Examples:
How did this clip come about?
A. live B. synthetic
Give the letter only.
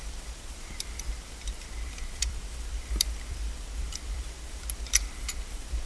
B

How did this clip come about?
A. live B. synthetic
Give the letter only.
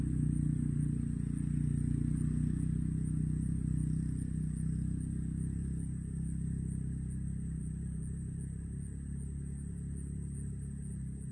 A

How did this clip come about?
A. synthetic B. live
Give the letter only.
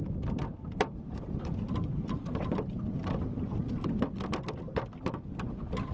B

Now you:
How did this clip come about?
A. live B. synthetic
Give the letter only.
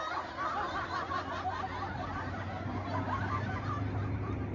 A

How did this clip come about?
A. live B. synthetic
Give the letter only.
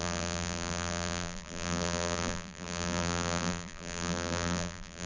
B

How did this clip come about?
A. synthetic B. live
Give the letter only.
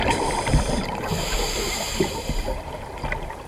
A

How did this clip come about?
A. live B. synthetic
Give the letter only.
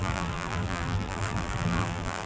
B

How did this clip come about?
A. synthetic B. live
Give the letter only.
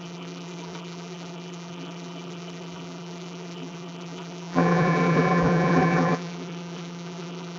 A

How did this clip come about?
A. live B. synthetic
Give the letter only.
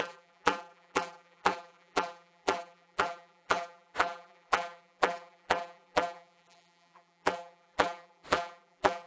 B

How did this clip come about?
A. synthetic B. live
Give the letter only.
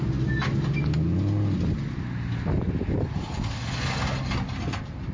B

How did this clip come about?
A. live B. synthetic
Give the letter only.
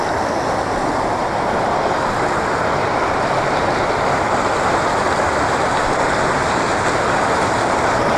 A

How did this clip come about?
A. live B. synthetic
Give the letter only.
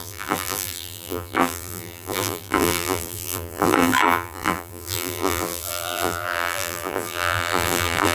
B